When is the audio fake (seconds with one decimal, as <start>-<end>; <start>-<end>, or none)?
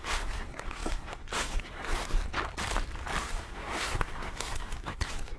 0.0-2.2; 3.2-5.4